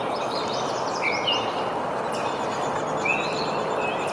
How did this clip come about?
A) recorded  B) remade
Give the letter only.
A